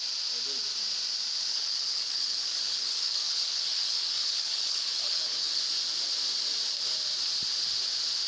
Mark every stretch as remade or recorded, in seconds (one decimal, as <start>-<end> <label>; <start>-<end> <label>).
0.0-1.5 recorded; 1.5-5.6 remade; 5.6-8.3 recorded